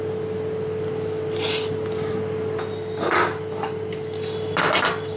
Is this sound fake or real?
real